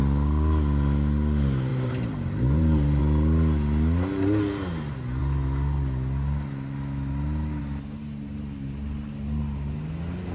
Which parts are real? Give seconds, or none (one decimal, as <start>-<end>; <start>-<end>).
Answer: 0.0-1.7; 3.0-10.3